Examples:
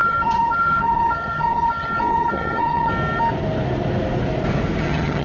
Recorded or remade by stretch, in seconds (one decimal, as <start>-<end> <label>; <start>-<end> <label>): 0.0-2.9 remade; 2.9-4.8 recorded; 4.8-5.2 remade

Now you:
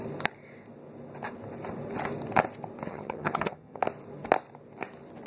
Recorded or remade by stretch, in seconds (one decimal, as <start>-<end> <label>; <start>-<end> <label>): 0.0-2.9 recorded; 2.9-3.8 remade; 3.8-5.3 recorded

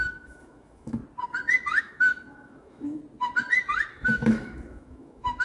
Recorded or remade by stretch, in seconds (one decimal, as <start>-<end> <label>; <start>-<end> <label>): 0.0-1.0 remade; 1.0-1.8 recorded; 1.8-3.0 remade; 3.0-3.9 recorded; 3.9-5.4 remade

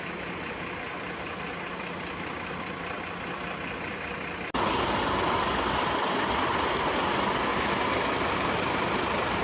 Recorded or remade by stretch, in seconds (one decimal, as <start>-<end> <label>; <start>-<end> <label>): 0.0-9.4 recorded